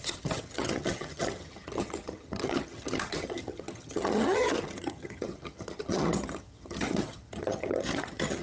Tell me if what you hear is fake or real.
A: fake